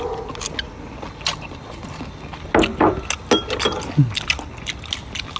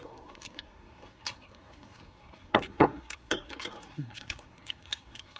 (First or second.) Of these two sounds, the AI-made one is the second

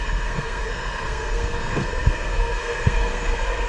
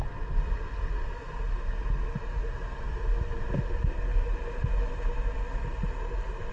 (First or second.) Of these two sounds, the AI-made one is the first